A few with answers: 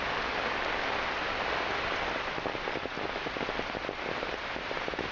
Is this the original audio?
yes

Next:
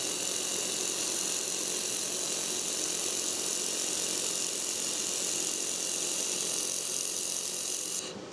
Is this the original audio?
yes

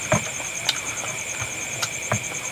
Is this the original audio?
no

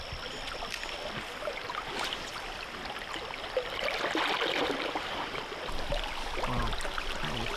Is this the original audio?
yes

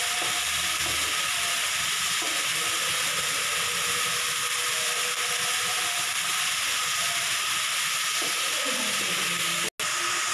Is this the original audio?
yes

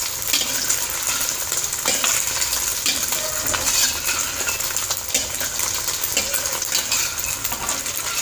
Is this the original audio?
yes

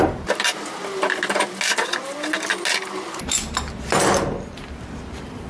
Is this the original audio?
yes